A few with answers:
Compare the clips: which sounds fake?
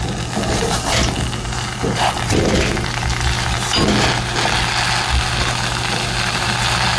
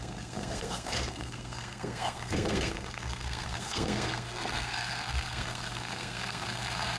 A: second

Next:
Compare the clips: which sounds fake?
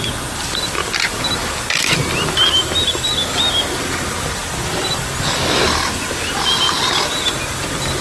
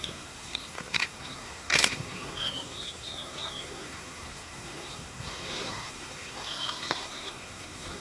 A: second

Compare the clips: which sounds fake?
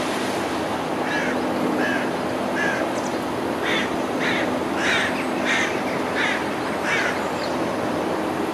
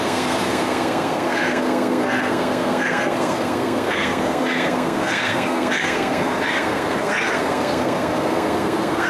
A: second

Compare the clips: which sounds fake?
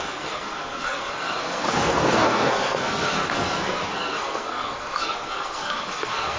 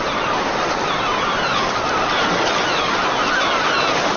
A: first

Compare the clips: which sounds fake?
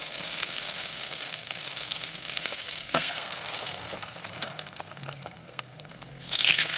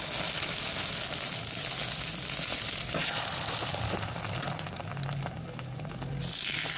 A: first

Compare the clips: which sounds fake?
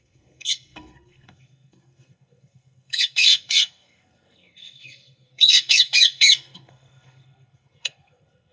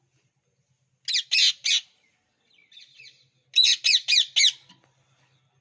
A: first